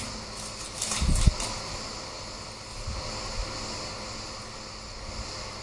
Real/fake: real